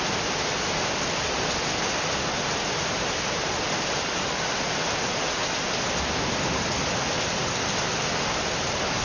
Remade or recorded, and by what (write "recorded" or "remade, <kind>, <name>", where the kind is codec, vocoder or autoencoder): recorded